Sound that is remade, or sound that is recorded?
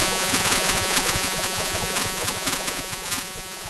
remade